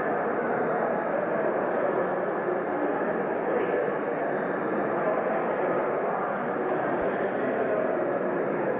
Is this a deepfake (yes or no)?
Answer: no